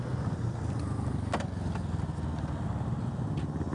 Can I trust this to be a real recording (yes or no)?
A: yes